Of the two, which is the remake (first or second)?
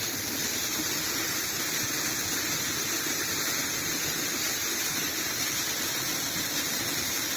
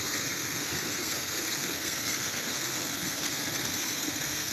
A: second